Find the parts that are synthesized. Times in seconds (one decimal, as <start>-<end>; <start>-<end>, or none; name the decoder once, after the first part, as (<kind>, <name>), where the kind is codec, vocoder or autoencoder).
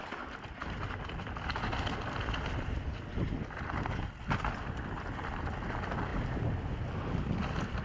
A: none